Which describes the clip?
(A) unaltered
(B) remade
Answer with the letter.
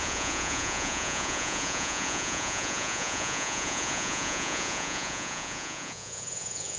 B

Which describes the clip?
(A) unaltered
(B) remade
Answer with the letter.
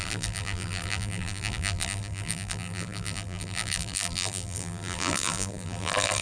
B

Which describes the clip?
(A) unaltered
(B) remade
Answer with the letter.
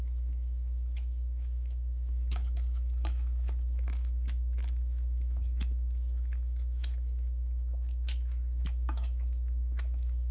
B